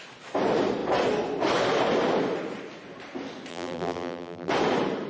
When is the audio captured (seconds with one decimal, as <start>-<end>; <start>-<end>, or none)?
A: 0.0-3.5; 4.5-5.1